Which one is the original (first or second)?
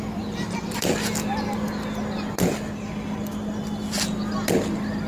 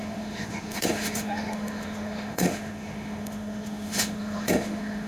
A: first